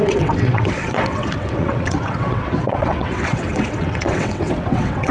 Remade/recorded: remade